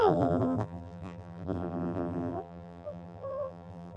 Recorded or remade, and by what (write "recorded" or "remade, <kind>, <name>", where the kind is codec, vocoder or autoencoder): remade, vocoder, BigVGAN v2